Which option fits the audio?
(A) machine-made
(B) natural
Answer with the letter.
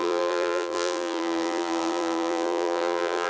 A